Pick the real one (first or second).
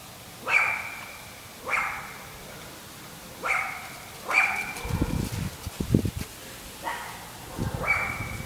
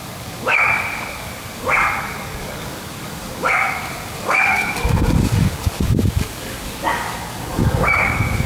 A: first